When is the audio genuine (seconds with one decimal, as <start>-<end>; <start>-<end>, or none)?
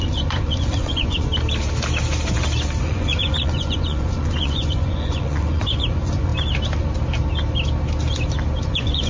1.3-2.8; 6.3-8.6